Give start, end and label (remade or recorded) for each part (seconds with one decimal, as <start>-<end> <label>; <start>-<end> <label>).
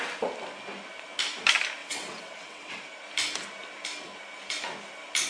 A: 0.0-1.8 recorded; 1.8-2.8 remade; 2.8-5.3 recorded